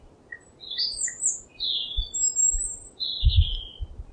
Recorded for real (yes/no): yes